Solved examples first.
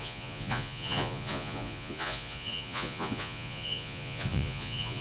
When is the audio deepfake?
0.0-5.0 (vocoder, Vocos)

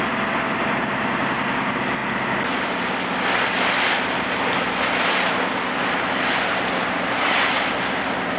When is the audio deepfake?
none

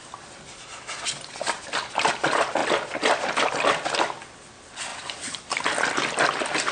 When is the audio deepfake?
none

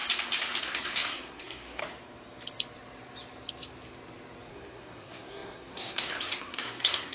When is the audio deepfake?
0.6-1.8 (codec, SNAC); 4.5-7.1

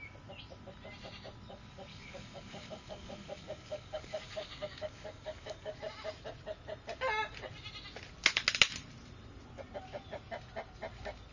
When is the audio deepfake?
1.9-5.8 (codec, DAC)

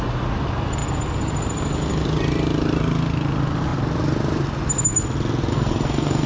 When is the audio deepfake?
5.5-6.3 (codec, SNAC)

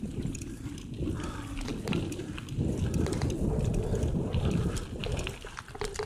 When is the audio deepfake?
none

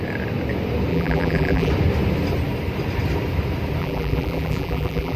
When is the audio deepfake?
0.9-1.7 (vocoder, BigVGAN v2); 3.8-5.2